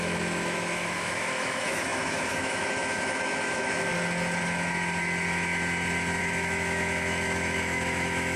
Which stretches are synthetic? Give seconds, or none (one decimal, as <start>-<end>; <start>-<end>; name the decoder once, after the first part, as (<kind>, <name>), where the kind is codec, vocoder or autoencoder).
0.0-3.9 (autoencoder, DAC-VAE); 6.2-8.4